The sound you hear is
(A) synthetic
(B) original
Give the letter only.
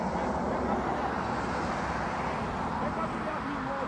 B